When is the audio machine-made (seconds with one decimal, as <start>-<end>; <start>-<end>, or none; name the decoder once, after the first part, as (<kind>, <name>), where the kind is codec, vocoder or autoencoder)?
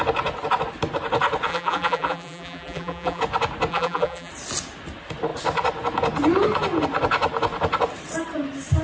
1.5-3.2 (vocoder, BigVGAN v2); 3.7-4.3